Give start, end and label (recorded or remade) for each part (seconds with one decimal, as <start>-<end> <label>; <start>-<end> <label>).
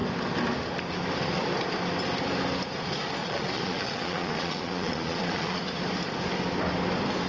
0.0-3.2 recorded; 3.2-5.6 remade; 5.6-7.3 recorded